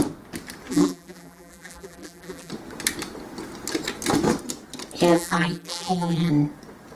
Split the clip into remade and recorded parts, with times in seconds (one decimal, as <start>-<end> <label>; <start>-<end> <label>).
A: 0.0-0.7 recorded; 0.7-2.5 remade; 2.5-5.1 recorded; 5.1-6.3 remade; 6.3-7.0 recorded